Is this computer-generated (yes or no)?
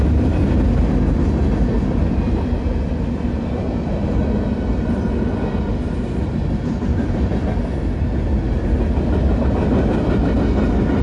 no